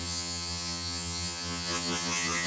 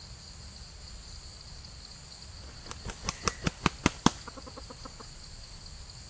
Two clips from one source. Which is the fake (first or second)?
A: first